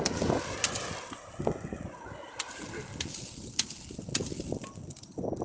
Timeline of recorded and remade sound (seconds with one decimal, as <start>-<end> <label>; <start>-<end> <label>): 0.0-5.4 recorded